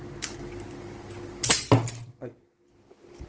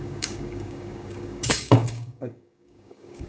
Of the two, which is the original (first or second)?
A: first